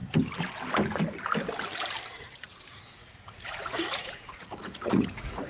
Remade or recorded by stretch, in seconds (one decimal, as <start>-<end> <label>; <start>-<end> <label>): 0.0-2.1 recorded; 2.1-5.5 remade